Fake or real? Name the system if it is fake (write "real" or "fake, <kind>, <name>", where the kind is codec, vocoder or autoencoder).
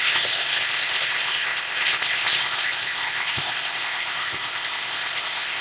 fake, codec, ZipCodec